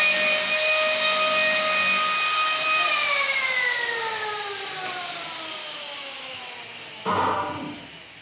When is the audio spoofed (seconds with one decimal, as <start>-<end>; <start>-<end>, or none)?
5.6-6.4